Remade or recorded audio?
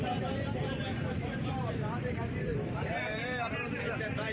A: remade